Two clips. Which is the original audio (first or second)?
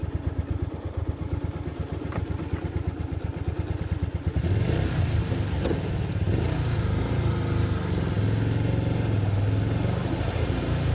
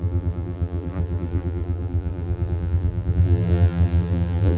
first